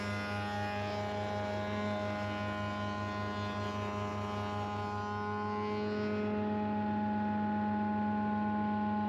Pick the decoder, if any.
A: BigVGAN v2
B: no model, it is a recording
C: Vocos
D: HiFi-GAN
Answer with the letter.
B